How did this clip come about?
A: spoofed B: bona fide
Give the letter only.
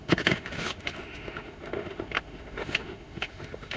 A